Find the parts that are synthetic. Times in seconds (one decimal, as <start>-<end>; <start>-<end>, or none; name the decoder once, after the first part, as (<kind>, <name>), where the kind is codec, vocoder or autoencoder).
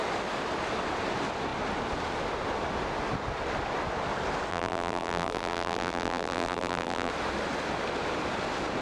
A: 4.5-7.1 (vocoder, BigVGAN v2)